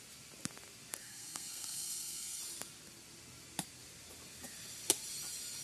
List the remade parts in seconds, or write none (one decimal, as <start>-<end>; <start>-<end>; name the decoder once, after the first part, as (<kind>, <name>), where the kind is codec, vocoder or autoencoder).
1.0-2.4 (codec, SNAC)